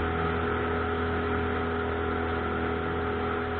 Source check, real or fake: real